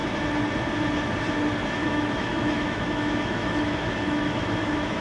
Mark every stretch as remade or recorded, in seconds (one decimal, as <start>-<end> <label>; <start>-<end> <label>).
0.0-1.8 recorded; 1.8-5.0 remade

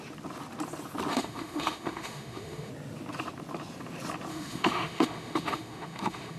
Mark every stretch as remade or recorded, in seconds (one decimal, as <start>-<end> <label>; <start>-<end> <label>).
0.0-1.1 recorded; 1.1-2.7 remade; 2.7-4.3 recorded; 4.3-6.4 remade

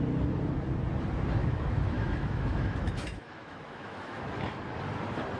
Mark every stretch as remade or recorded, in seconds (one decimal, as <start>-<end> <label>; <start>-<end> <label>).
0.0-1.4 recorded; 1.4-4.6 remade; 4.6-5.4 recorded